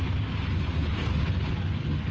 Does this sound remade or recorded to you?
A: recorded